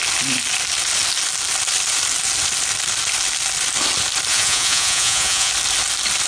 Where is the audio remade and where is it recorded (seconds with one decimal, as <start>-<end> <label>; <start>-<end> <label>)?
0.0-4.3 recorded; 4.3-5.5 remade; 5.5-6.3 recorded